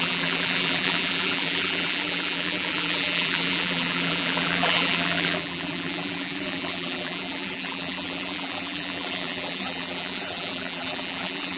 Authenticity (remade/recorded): remade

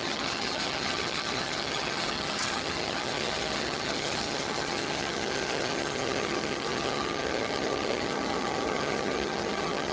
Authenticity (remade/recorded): remade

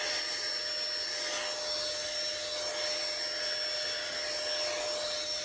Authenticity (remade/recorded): recorded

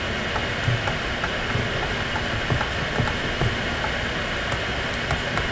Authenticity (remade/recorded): recorded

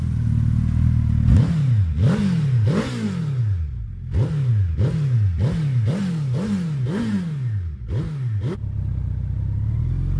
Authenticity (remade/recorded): recorded